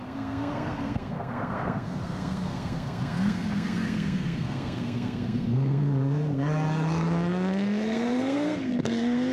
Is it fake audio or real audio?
fake